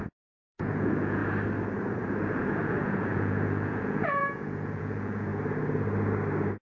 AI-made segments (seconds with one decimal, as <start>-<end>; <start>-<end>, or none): 0.0-1.2; 2.2-5.3

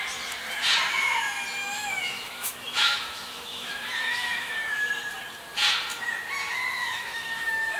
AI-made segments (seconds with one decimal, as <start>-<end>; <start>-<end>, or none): 1.6-4.9; 6.8-7.8

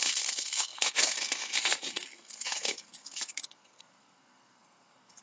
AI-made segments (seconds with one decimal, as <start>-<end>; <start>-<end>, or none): 0.0-5.2